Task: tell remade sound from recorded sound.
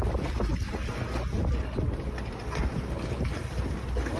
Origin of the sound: recorded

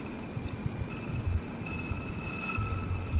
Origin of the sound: recorded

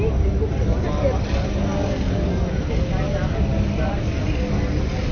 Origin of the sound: recorded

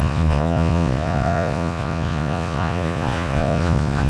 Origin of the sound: remade